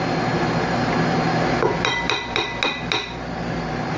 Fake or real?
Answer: real